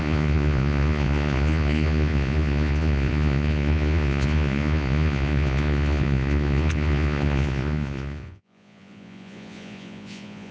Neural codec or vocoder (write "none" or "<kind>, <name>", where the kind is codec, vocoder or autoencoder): vocoder, Vocos